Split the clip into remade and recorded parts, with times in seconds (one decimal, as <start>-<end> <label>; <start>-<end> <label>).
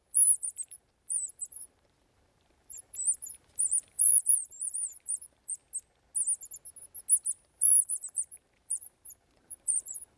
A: 0.0-5.6 remade; 5.6-7.3 recorded; 7.3-10.2 remade